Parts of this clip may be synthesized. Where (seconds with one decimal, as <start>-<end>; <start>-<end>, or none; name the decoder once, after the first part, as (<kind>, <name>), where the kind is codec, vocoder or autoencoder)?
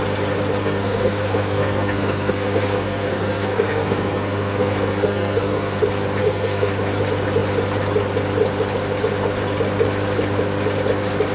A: 0.6-5.8 (codec, SNAC); 6.2-6.7